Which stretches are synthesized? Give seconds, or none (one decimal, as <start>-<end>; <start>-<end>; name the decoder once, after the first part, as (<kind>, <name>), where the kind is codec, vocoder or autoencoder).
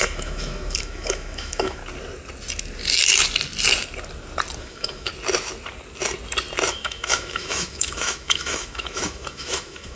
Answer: 0.0-1.8 (autoencoder, DAC-VAE); 4.6-5.1; 6.7-9.9